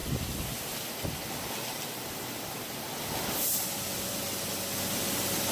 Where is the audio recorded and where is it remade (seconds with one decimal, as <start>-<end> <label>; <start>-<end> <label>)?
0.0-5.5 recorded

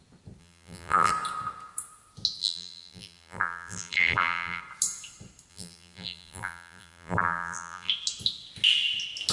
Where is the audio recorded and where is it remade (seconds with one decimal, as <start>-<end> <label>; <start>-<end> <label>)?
0.0-0.4 recorded; 0.4-1.1 remade; 1.1-2.4 recorded; 2.4-4.6 remade; 4.6-5.5 recorded; 5.5-7.9 remade; 7.9-9.3 recorded

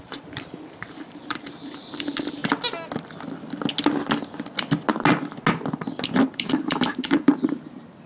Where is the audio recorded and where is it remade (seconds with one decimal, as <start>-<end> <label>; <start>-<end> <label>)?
0.0-2.4 remade; 2.4-6.3 recorded; 6.3-8.1 remade